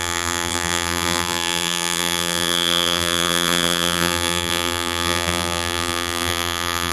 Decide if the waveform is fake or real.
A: fake